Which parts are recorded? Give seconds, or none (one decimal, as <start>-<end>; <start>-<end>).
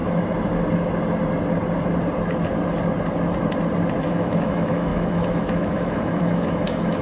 0.0-4.0